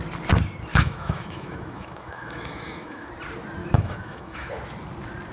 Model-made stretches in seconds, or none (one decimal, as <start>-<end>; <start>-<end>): 0.7-3.1; 3.6-4.5